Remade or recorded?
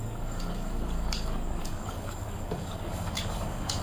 remade